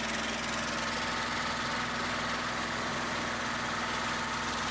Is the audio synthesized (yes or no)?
no